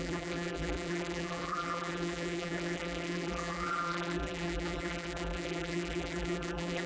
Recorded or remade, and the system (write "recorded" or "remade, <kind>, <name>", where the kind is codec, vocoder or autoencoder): remade, vocoder, BigVGAN v2